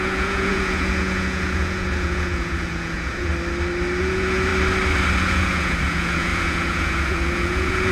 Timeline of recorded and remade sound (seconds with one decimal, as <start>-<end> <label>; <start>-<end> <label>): 0.0-3.3 remade; 3.3-4.0 recorded; 4.0-4.5 remade; 4.5-5.2 recorded; 5.2-7.9 remade